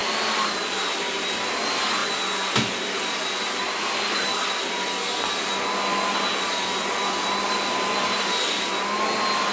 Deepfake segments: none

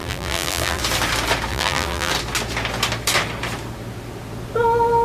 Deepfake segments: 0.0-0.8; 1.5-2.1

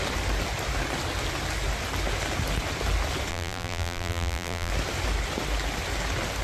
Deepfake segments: 3.3-4.7